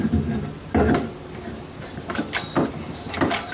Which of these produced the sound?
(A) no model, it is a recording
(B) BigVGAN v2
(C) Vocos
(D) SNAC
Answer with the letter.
B